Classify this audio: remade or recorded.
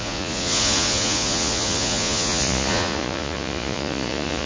remade